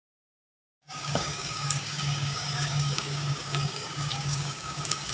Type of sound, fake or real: fake